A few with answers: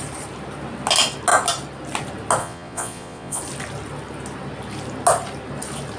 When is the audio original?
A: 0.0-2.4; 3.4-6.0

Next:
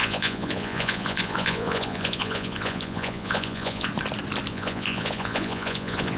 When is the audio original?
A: 3.9-4.5